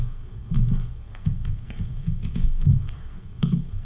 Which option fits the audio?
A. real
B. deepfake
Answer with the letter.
B